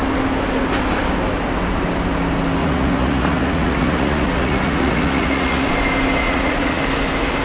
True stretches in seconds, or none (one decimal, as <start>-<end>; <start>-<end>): 0.0-2.6; 5.7-6.2; 6.8-7.4